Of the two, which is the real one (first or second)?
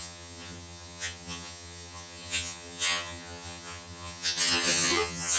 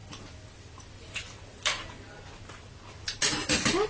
second